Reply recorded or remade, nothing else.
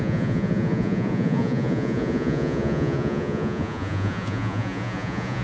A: remade